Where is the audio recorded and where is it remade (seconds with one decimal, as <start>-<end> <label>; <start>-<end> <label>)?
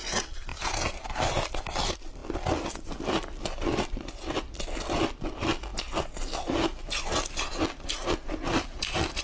0.0-9.2 recorded